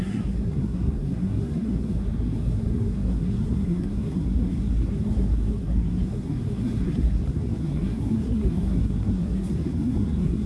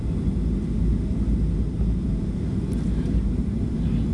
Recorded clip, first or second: second